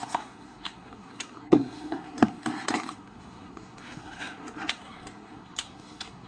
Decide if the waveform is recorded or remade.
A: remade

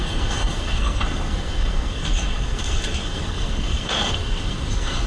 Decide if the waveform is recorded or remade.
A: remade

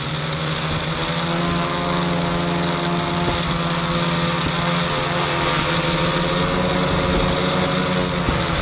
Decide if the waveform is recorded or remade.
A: recorded